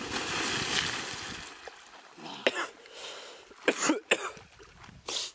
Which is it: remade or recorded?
recorded